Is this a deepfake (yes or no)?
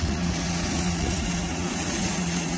yes